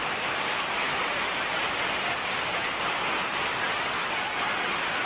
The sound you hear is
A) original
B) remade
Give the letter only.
A